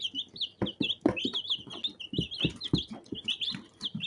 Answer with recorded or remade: recorded